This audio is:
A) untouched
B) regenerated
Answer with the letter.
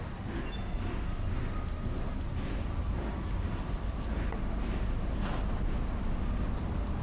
A